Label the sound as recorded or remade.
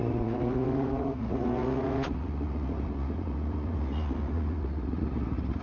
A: remade